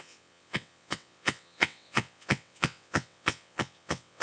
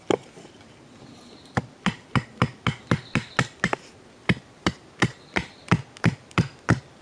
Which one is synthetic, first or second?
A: first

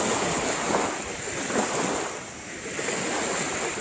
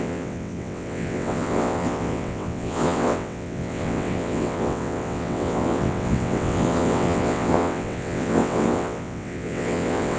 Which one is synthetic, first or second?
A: second